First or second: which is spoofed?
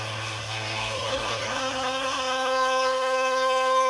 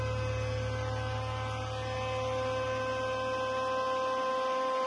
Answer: first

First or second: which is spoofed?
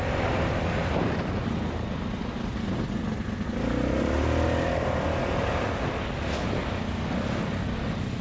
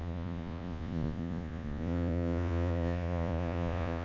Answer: second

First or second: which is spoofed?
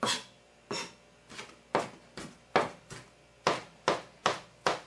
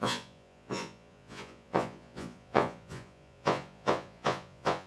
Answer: second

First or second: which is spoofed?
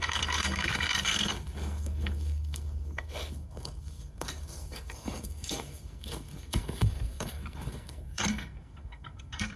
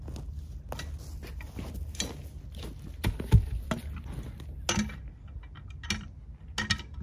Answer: first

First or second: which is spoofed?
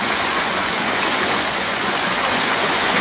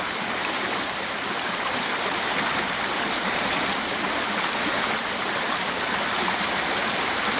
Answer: first